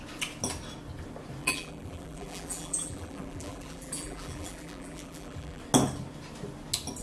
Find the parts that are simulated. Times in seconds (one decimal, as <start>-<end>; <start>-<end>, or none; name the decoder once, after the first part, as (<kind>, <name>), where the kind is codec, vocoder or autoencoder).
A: 1.4-5.6 (vocoder, BigVGAN v2)